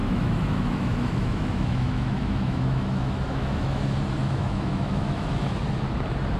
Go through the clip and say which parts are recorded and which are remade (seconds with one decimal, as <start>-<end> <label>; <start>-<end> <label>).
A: 0.0-3.8 remade; 3.8-4.2 recorded; 4.2-5.6 remade; 5.6-6.4 recorded